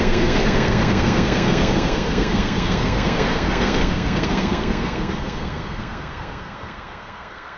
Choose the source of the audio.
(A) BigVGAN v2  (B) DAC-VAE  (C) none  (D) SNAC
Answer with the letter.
D